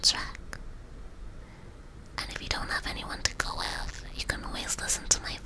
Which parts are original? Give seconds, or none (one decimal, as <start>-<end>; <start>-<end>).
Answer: 0.0-3.3; 4.2-5.5